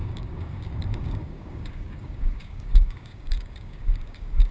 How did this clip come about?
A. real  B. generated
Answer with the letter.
B